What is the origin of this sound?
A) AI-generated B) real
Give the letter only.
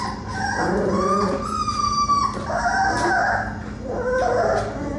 B